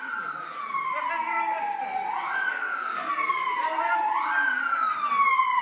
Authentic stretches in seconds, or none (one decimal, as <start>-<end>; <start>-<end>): 0.0-2.6; 3.1-5.6